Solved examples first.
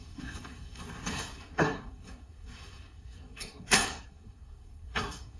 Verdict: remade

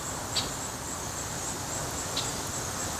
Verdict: recorded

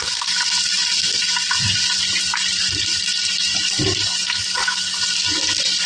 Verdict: recorded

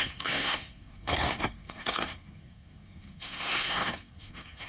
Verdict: remade